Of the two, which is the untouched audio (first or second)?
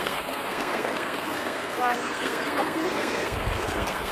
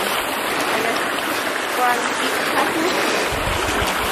second